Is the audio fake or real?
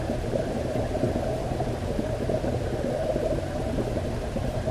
fake